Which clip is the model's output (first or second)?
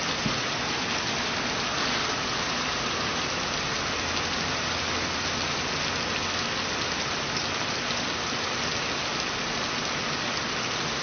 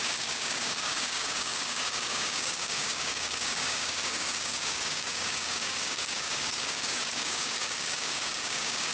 second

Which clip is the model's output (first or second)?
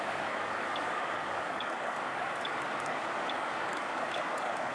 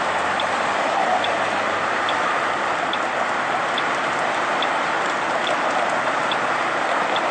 first